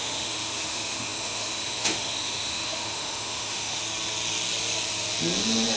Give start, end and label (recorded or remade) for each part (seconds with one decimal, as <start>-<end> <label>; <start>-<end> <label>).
0.0-3.8 remade; 3.8-5.8 recorded